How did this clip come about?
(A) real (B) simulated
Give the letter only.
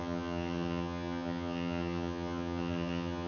B